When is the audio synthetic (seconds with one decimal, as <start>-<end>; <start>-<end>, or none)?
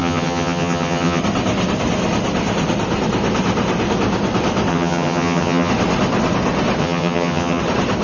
0.0-1.2; 4.7-5.7; 6.8-7.6